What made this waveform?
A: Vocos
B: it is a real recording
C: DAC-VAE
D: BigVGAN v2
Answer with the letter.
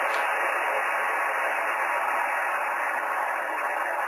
B